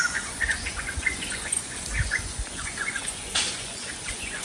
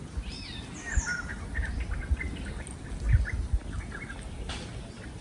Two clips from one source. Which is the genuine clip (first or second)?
second